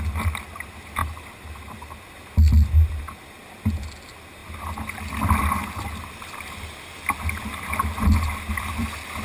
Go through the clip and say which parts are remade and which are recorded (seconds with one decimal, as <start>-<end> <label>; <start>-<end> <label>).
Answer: 0.0-9.2 recorded